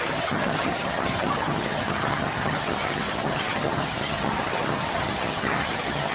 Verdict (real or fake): fake